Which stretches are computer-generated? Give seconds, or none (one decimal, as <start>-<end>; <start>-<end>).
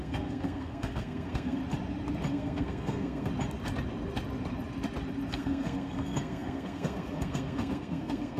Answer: 0.0-1.6; 2.3-3.3; 5.3-8.4